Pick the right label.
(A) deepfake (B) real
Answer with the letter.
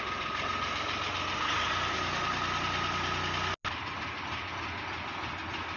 B